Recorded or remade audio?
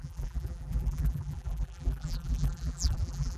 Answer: remade